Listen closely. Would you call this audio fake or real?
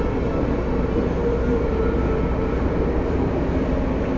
real